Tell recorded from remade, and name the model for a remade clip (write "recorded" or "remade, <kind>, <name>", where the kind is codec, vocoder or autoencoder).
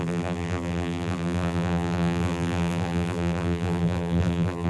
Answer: remade, vocoder, BigVGAN v2